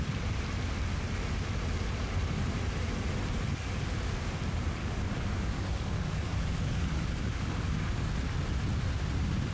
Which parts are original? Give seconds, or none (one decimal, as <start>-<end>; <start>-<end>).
0.0-4.8; 8.1-9.5